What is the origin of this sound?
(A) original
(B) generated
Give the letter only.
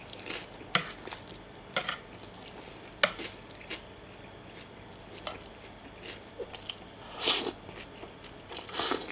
A